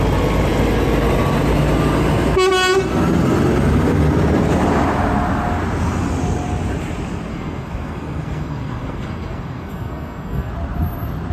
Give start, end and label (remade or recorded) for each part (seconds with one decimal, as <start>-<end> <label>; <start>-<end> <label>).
0.0-7.3 recorded; 7.3-10.5 remade; 10.5-11.3 recorded